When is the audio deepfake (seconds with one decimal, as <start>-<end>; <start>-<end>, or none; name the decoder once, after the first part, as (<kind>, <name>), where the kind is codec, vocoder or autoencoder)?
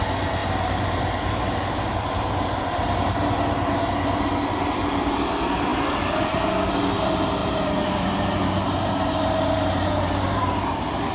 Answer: 0.4-1.3 (vocoder, BigVGAN v2); 7.4-11.1